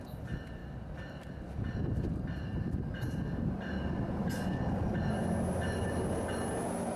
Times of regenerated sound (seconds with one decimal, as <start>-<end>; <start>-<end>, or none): none